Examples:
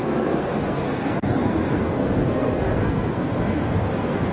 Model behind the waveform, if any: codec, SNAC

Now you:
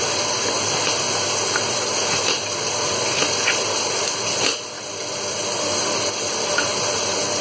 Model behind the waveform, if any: none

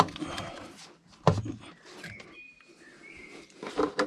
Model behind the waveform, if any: none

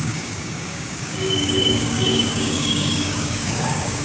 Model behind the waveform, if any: codec, DAC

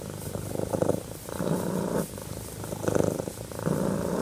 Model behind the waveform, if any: none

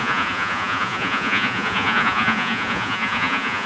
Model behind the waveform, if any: vocoder, Vocos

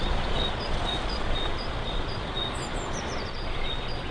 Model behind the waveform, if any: vocoder, Vocos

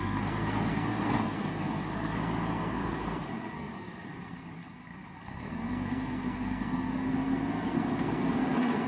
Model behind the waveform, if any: codec, SNAC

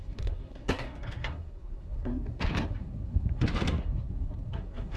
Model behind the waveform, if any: codec, SNAC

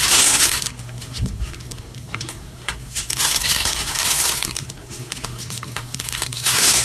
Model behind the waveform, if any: codec, SNAC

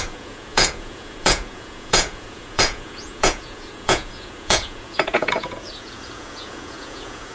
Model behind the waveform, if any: vocoder, Vocos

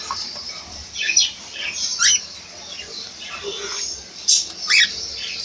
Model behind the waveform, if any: none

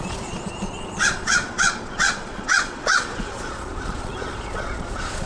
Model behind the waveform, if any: vocoder, Vocos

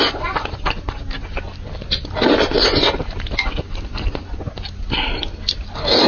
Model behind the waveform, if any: none